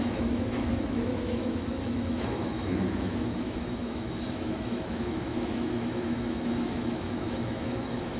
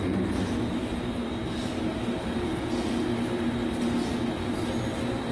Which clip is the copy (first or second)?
first